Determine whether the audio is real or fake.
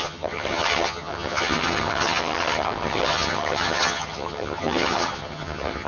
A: fake